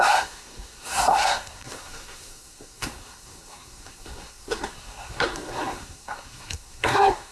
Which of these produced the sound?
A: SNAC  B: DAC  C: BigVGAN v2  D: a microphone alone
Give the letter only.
A